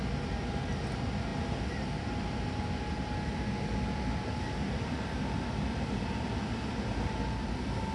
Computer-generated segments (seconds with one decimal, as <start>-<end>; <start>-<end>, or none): none